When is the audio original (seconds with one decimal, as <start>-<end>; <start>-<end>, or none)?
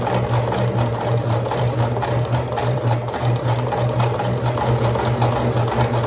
0.0-0.9; 4.6-6.1